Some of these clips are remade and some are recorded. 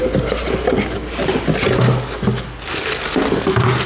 recorded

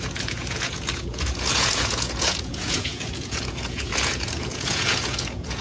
remade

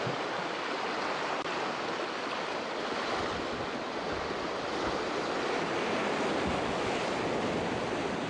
recorded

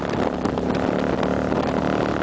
recorded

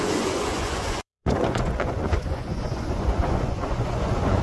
remade